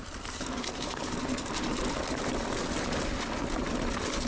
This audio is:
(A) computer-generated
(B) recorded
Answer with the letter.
B